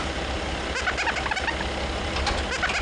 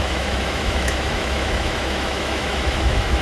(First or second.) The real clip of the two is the first